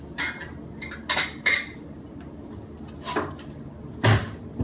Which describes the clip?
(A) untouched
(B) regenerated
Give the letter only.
A